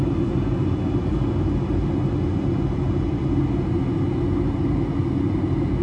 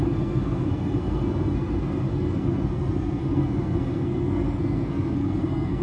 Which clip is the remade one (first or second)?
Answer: second